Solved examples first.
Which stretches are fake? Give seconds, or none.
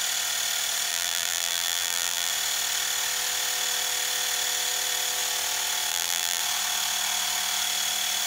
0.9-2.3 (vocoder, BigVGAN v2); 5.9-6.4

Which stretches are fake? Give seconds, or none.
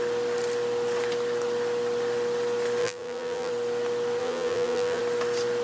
2.8-3.5 (vocoder, BigVGAN v2); 4.2-5.0